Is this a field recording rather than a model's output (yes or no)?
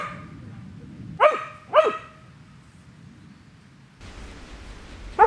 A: yes